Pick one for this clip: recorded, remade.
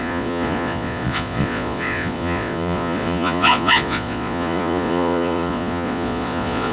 remade